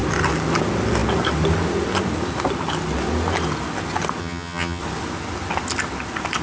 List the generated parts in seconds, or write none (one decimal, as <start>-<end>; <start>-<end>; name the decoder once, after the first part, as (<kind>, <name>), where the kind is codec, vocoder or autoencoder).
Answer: 4.2-4.8 (vocoder, HiFi-GAN)